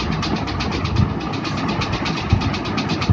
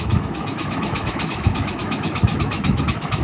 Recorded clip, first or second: first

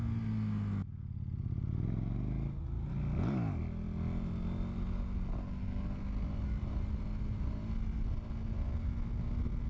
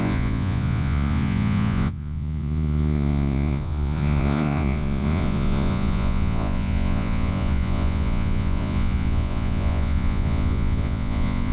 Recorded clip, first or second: first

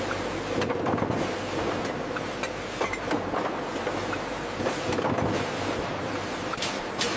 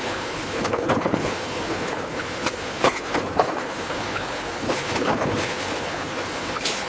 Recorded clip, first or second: first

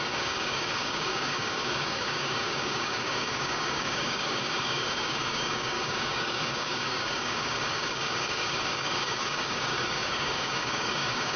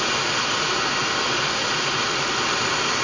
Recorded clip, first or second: second